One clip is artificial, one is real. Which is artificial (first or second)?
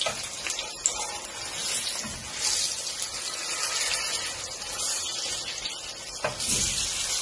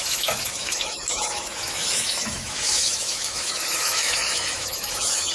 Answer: second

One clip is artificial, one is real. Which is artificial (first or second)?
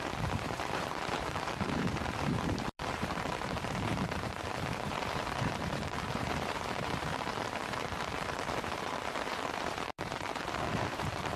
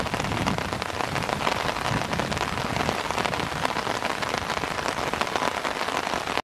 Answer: first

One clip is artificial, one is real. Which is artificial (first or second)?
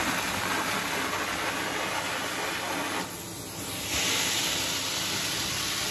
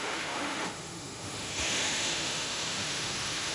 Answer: second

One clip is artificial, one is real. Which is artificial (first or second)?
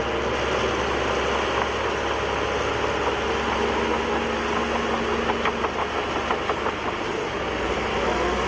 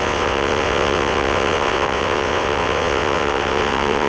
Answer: second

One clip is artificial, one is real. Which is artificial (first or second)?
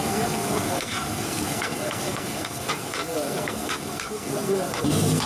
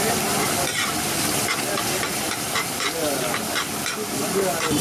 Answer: first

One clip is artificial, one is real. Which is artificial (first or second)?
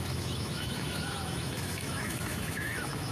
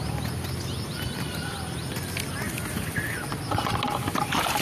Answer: first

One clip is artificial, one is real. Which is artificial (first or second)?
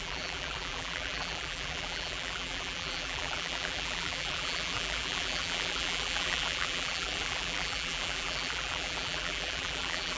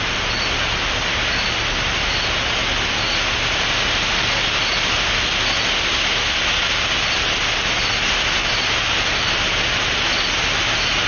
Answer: first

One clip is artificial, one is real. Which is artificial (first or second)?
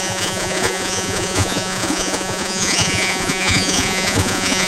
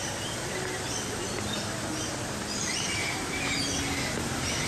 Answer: first